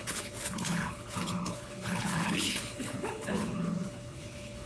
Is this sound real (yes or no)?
no